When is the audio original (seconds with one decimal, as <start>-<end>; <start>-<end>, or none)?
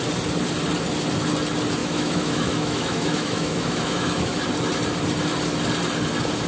0.0-1.8; 4.4-6.5